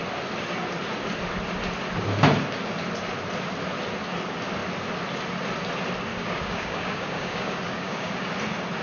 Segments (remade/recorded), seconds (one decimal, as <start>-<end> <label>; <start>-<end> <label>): 0.0-6.1 recorded; 6.1-8.3 remade; 8.3-8.8 recorded